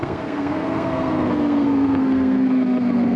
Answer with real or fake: fake